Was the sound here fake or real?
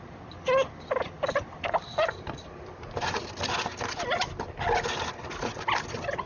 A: real